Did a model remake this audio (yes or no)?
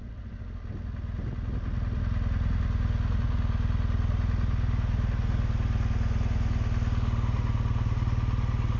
no